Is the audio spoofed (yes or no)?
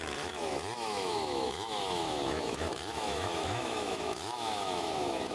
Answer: yes